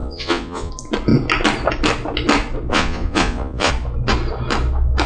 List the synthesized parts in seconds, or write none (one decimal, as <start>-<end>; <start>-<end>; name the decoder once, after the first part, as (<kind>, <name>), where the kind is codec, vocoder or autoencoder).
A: 0.0-0.7 (vocoder, Vocos); 2.7-3.7